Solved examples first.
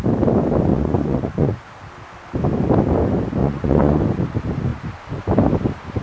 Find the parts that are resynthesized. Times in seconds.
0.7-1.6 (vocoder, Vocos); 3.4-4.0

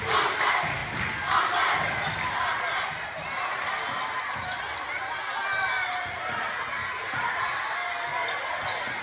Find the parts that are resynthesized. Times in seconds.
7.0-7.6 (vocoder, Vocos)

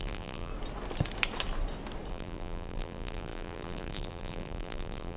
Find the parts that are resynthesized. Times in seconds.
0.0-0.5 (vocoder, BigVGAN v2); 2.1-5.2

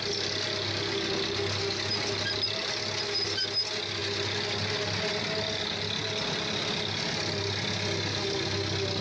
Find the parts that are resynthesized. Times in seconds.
none